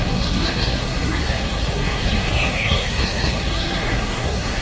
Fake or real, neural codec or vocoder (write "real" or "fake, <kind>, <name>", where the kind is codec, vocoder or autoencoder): fake, codec, SNAC